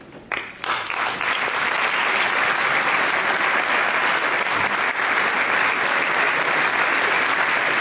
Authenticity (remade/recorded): recorded